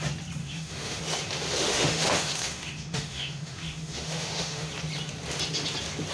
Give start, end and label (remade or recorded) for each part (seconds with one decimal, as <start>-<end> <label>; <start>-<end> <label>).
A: 0.0-0.4 recorded; 0.4-1.0 remade; 1.0-1.6 recorded; 1.6-4.7 remade; 4.7-6.1 recorded